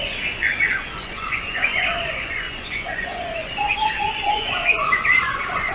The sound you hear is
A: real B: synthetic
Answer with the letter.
B